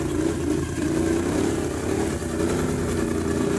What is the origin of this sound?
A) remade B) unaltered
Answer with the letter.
B